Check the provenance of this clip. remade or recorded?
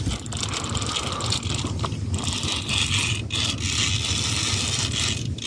recorded